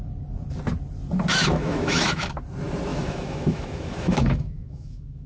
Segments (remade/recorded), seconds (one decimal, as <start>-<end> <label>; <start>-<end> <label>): 0.0-1.3 recorded; 1.3-2.3 remade; 2.3-2.9 recorded; 2.9-5.3 remade

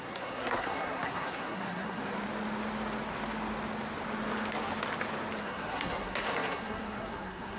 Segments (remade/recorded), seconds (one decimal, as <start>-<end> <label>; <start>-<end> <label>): 0.0-2.0 remade; 2.0-5.4 recorded; 5.4-7.6 remade

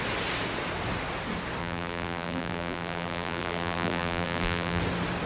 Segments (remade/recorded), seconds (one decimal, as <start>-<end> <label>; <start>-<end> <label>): 0.0-1.6 recorded; 1.6-4.8 remade; 4.8-5.3 recorded

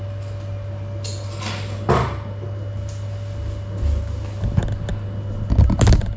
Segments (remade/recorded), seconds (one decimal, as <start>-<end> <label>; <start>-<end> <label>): 0.0-6.2 recorded